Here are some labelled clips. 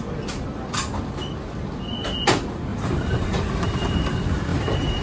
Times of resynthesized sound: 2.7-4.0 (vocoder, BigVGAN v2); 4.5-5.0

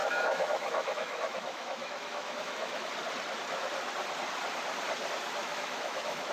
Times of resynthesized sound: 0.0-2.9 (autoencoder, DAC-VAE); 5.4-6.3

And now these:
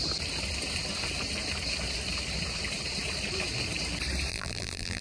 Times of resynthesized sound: 4.3-5.0 (vocoder, BigVGAN v2)

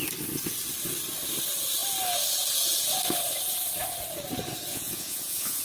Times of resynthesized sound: 4.7-5.6 (vocoder, Vocos)

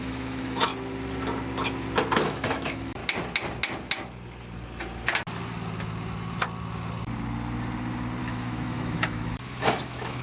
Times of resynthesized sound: 0.0-0.7 (autoencoder, DAC-VAE); 2.2-3.0; 8.2-10.2

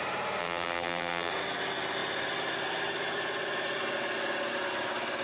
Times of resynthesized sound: 0.4-1.3 (vocoder, BigVGAN v2)

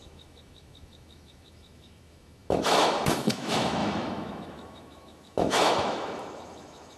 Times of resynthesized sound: 0.0-7.0 (autoencoder, DAC-VAE)